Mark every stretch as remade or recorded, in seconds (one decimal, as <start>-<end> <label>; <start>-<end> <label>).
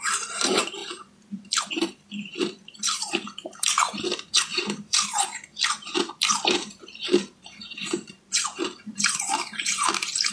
0.0-10.3 remade